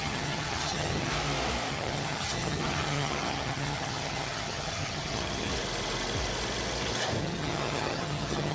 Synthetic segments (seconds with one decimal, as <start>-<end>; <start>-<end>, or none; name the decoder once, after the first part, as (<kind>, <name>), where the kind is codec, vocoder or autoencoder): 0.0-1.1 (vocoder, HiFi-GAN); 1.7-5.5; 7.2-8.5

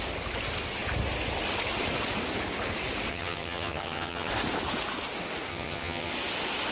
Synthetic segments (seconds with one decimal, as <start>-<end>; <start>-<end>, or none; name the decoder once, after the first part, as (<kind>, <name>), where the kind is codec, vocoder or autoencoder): 3.1-4.3 (vocoder, HiFi-GAN); 5.5-6.1

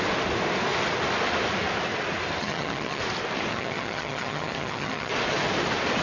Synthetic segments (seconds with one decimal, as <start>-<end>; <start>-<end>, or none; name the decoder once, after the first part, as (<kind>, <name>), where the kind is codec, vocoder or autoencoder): 2.4-3.0 (vocoder, HiFi-GAN); 3.5-5.1

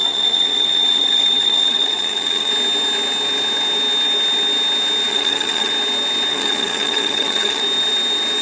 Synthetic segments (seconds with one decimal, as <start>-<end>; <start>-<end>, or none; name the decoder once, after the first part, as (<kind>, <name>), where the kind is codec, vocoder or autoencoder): 0.0-2.5 (vocoder, HiFi-GAN); 5.1-5.7; 6.3-7.6

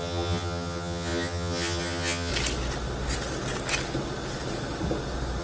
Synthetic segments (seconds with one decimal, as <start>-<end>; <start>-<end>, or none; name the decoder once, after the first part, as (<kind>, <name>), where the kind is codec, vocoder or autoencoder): 0.0-2.3 (vocoder, HiFi-GAN)

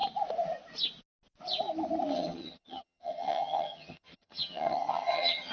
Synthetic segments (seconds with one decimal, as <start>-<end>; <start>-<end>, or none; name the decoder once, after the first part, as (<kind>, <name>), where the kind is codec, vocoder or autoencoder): 2.1-5.5 (vocoder, HiFi-GAN)

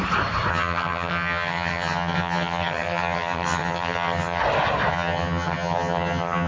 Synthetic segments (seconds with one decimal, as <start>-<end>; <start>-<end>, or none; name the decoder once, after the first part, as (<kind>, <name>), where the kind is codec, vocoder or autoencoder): 0.5-4.4 (vocoder, HiFi-GAN); 4.9-6.5